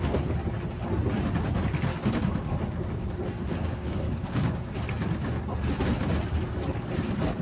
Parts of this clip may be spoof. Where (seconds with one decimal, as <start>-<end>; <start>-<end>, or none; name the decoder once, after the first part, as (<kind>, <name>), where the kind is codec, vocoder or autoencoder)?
1.9-2.5 (codec, DAC); 3.6-4.7